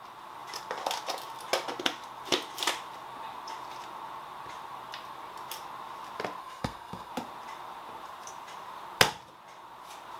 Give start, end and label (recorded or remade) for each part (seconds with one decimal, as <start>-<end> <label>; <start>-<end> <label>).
0.0-6.4 recorded; 6.4-7.1 remade; 7.1-10.2 recorded